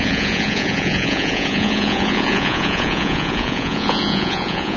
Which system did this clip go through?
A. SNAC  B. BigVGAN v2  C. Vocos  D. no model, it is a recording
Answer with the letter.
C